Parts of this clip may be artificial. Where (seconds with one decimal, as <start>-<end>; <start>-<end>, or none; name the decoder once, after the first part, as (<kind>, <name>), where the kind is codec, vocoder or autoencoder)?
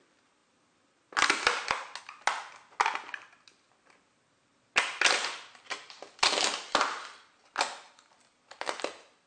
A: none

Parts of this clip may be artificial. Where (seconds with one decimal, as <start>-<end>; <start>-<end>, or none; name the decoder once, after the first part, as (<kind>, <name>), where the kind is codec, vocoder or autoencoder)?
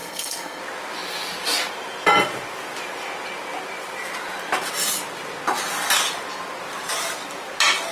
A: 0.0-0.6 (codec, SNAC)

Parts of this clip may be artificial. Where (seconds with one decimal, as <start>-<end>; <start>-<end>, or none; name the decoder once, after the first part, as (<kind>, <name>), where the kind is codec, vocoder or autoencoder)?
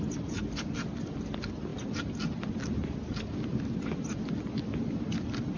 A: none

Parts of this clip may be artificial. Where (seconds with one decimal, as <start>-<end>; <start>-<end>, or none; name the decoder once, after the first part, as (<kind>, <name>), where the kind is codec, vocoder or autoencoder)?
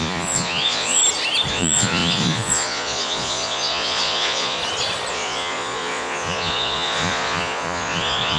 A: 0.0-1.0 (vocoder, Vocos); 1.5-4.6; 5.1-8.4